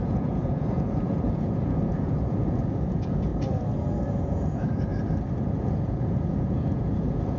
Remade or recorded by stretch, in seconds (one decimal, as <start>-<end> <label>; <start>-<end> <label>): 0.0-3.3 remade; 3.3-4.1 recorded; 4.1-4.9 remade; 4.9-5.4 recorded; 5.4-7.4 remade